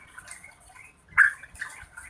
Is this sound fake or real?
real